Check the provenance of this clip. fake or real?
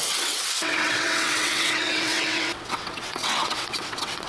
fake